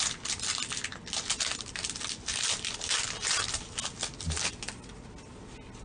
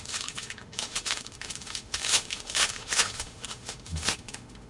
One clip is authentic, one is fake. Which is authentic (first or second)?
first